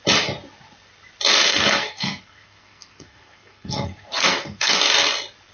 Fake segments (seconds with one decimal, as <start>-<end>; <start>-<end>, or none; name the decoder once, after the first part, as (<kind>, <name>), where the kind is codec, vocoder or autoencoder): 1.5-4.8 (codec, SNAC)